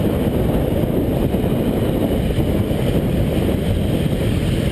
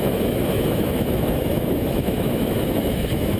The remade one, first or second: second